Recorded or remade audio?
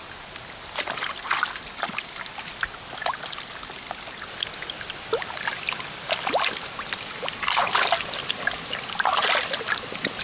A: recorded